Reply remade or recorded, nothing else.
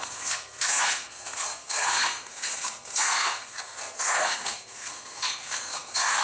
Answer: remade